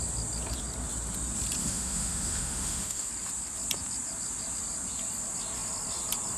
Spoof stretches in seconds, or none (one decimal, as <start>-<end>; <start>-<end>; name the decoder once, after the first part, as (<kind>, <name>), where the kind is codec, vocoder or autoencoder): 1.6-3.1 (autoencoder, DAC-VAE)